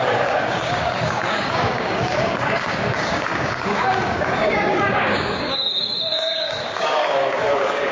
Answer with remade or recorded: remade